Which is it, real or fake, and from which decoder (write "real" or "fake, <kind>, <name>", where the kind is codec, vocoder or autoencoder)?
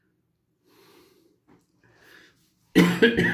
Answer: real